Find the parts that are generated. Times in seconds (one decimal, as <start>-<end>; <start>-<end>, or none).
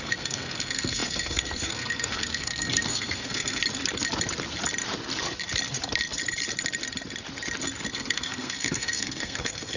0.0-3.6; 7.9-9.8